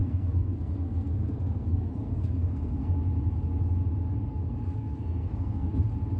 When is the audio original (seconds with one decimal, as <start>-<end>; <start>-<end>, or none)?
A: 3.0-4.3; 5.7-6.2

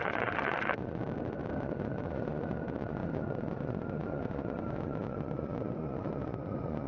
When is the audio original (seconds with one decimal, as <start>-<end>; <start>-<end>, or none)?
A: 1.0-1.6